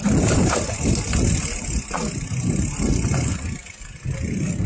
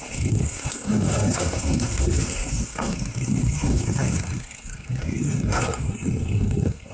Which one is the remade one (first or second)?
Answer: second